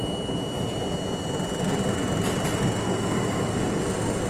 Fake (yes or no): no